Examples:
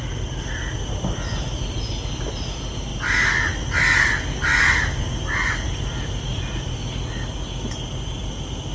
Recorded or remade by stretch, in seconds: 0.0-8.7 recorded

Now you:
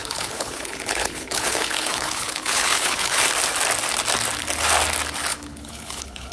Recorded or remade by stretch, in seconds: 0.0-3.2 remade; 3.2-5.3 recorded; 5.3-6.3 remade

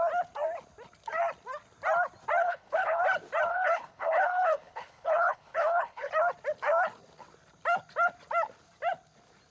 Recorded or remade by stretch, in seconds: 0.0-2.4 recorded; 2.4-3.0 remade; 3.0-3.5 recorded; 3.5-6.1 remade; 6.1-9.5 recorded

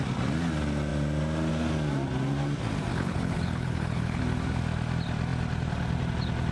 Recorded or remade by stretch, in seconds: 0.0-2.9 recorded; 2.9-4.2 remade; 4.2-6.5 recorded

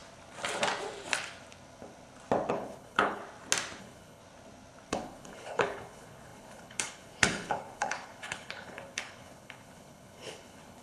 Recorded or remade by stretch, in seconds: 0.0-2.5 recorded; 2.5-3.2 remade; 3.2-3.8 recorded; 3.8-4.2 remade; 4.2-4.9 recorded; 4.9-10.8 remade

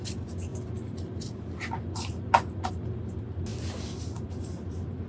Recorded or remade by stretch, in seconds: 0.0-5.1 recorded